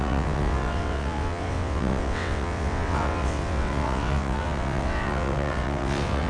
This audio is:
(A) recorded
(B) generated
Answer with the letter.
B